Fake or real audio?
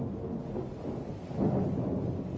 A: real